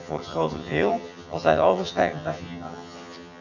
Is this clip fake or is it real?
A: fake